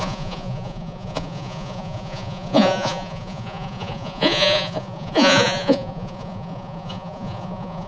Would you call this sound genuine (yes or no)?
no